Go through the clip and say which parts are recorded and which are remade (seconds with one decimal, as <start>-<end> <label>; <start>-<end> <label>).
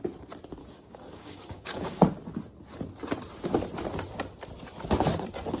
0.0-0.6 recorded; 0.6-2.0 remade; 2.0-5.6 recorded